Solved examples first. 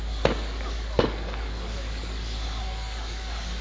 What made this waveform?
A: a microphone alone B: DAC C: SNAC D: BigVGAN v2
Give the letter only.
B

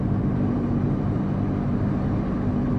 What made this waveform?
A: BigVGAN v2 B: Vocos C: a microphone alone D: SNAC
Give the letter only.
A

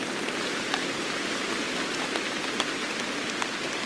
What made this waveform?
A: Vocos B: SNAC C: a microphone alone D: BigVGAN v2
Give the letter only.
C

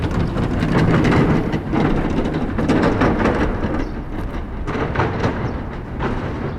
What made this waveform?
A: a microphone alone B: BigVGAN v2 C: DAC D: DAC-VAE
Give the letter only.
A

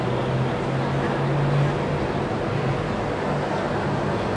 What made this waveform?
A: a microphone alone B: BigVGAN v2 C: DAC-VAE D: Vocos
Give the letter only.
A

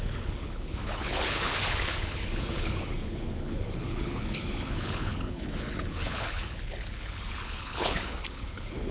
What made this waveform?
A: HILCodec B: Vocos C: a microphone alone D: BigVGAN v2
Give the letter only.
A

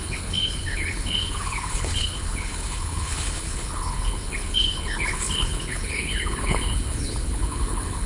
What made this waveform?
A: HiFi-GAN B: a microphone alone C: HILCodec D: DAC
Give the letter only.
C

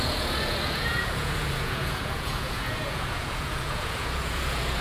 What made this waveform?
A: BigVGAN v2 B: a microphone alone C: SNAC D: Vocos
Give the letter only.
D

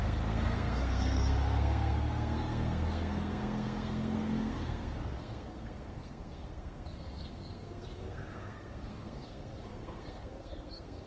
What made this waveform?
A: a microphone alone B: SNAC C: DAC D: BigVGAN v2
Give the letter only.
B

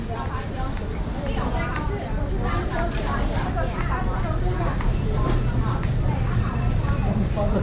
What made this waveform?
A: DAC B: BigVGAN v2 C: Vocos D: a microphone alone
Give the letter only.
B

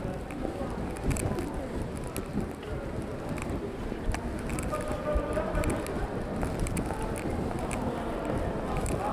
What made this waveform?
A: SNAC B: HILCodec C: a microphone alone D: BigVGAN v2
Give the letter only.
C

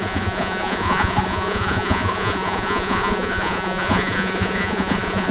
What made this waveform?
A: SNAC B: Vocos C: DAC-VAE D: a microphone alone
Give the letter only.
B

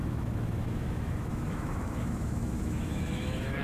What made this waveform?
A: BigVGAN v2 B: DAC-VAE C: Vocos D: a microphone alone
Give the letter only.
B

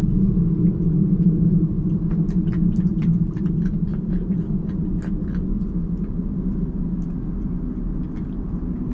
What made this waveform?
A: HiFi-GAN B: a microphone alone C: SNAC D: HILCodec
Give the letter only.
B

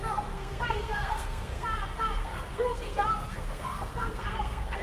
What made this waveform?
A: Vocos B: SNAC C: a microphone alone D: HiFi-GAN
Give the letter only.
B